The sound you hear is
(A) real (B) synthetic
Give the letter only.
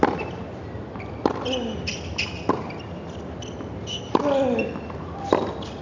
A